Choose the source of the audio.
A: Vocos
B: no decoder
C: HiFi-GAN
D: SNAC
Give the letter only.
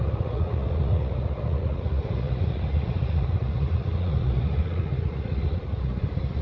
A